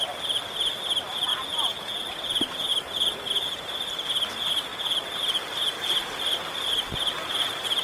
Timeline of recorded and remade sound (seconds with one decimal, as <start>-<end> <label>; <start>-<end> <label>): 0.0-1.3 recorded; 1.3-2.0 remade; 2.0-7.8 recorded